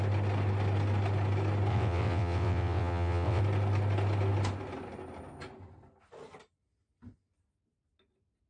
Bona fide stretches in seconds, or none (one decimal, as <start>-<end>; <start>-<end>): 0.0-1.7; 3.4-8.5